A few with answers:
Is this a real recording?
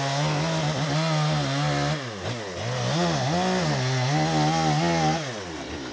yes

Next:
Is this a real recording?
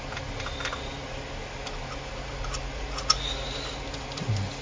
yes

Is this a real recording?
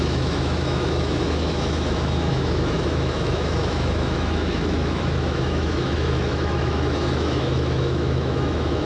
no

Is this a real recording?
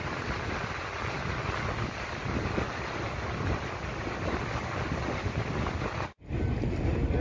yes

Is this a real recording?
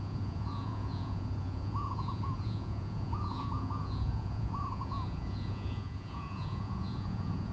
no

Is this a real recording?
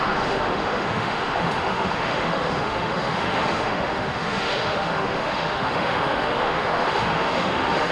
no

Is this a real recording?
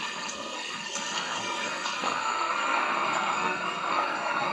no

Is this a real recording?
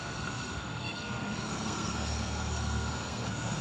no